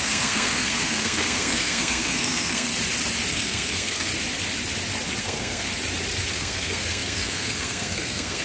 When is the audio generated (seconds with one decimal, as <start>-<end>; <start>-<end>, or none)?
0.0-2.7; 3.3-4.1; 5.2-5.7; 6.3-8.4